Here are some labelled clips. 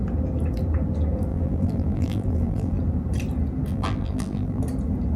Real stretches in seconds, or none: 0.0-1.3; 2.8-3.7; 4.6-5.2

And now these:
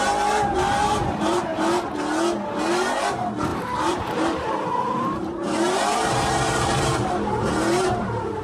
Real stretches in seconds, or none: 1.5-2.7

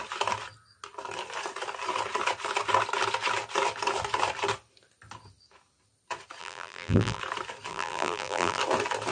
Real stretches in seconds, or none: 0.0-6.4; 7.2-7.7; 8.6-9.1